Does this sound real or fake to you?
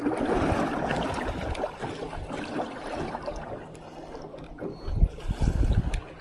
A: real